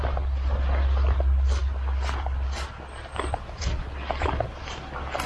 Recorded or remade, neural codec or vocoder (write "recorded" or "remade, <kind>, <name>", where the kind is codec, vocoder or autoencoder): recorded